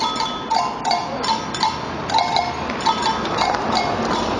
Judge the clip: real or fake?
real